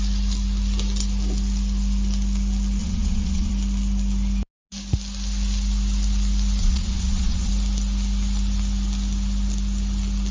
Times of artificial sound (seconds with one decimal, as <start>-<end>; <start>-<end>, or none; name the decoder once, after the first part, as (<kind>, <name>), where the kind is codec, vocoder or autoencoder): 2.8-3.5 (vocoder, WaveNeXt); 6.6-7.5